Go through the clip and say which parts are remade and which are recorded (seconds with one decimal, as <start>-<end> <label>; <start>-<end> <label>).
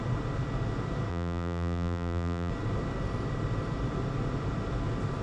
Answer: 0.0-1.1 recorded; 1.1-2.5 remade; 2.5-5.2 recorded